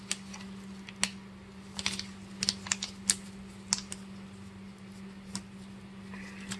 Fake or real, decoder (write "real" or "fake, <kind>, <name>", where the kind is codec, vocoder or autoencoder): real